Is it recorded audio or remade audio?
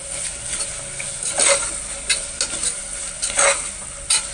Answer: recorded